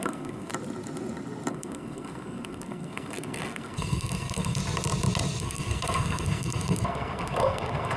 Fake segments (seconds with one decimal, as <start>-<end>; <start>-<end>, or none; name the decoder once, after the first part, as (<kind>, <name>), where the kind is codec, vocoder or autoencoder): 0.0-0.5 (codec, SNAC); 1.5-4.6; 5.4-8.0